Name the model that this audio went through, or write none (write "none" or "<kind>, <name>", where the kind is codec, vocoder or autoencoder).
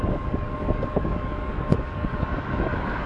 codec, DAC